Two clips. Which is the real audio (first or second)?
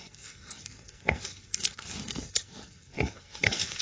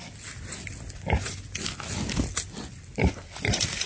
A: second